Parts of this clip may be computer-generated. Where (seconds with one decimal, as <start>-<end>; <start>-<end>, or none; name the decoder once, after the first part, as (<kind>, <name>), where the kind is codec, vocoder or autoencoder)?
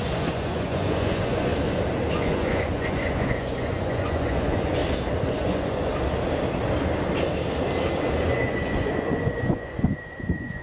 0.0-1.5 (vocoder, Vocos); 2.1-4.8; 5.3-5.9; 8.2-10.6